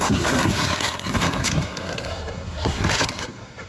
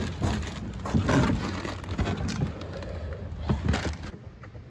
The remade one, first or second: first